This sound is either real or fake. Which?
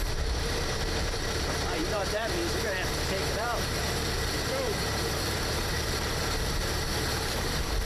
fake